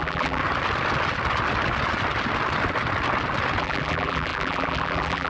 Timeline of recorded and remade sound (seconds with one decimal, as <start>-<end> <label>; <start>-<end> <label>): 0.0-0.4 remade; 0.4-3.6 recorded; 3.6-5.3 remade

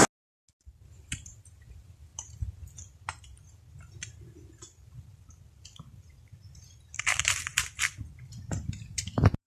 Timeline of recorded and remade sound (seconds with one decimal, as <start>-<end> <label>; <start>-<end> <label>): 0.0-0.6 recorded; 0.6-2.1 remade; 2.1-3.7 recorded; 3.7-9.5 remade

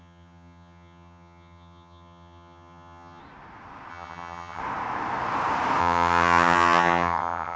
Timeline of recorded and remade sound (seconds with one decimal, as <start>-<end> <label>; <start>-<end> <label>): 0.0-3.2 remade; 3.2-3.9 recorded; 3.9-4.6 remade; 4.6-5.8 recorded; 5.8-7.6 remade

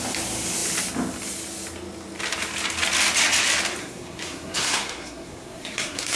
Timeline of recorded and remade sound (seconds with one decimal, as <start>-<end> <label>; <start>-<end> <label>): 0.0-3.8 recorded; 3.8-6.2 remade

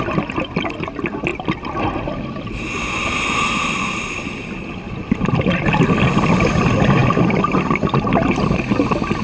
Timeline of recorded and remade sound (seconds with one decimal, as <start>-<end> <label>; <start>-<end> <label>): 0.0-9.2 recorded

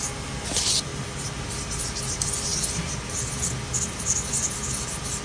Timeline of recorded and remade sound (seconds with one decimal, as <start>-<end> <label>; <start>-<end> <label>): 0.0-5.2 recorded

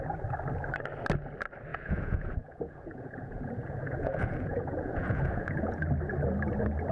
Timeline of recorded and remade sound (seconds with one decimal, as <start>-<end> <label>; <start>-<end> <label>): 0.0-1.7 recorded; 1.7-5.8 remade; 5.8-6.9 recorded